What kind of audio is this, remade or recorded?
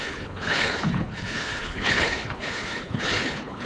remade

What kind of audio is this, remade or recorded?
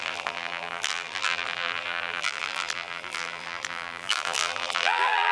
remade